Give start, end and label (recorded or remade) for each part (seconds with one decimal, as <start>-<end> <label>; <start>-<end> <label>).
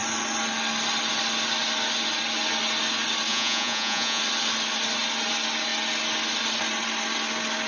0.0-3.3 recorded; 3.3-4.2 remade; 4.2-7.7 recorded